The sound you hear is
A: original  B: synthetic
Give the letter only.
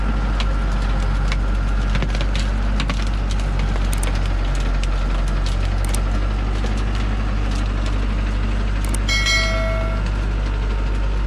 A